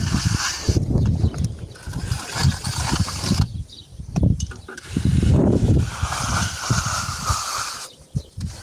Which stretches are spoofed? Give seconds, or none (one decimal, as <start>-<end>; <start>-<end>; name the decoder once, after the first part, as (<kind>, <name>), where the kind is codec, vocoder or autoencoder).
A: 3.9-8.6 (vocoder, BigVGAN v2)